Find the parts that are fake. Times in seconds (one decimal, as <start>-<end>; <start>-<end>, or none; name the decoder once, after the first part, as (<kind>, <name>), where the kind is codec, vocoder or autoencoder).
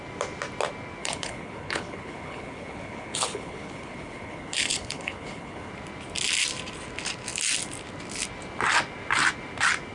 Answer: 1.0-5.7 (codec, HILCodec)